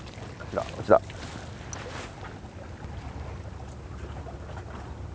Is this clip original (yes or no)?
yes